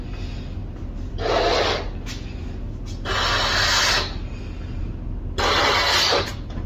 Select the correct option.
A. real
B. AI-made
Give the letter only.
A